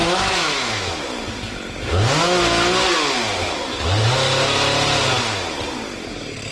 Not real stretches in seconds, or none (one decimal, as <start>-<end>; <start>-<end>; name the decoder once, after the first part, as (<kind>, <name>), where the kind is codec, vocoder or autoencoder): 0.0-0.9 (autoencoder, DAC-VAE)